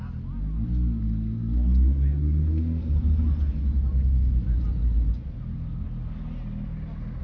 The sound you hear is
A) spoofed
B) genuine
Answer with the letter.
B